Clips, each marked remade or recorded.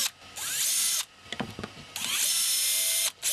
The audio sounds recorded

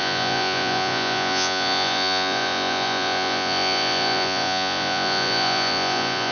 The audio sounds remade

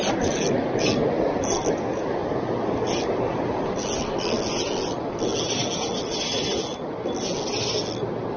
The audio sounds recorded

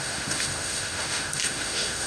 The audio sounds remade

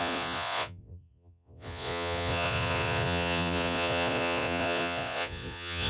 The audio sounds remade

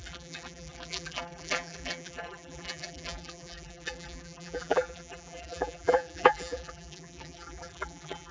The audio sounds remade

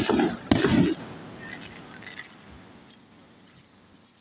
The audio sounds recorded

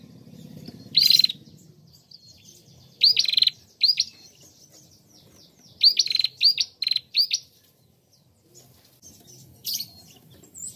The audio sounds recorded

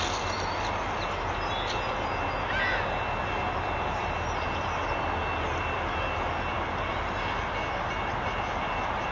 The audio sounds recorded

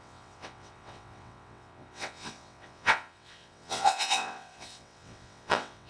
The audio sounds remade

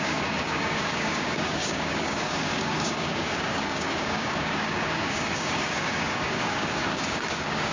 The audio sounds remade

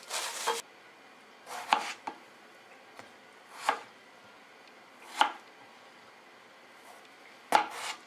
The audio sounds recorded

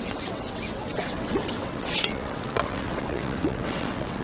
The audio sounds remade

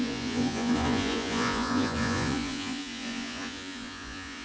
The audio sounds remade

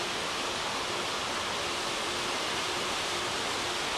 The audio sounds recorded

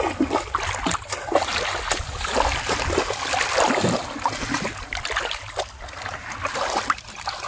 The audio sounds recorded